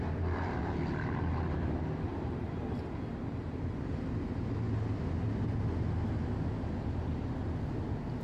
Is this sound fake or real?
real